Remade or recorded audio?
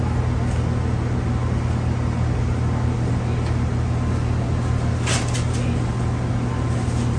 recorded